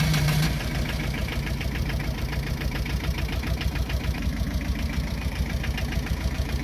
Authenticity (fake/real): fake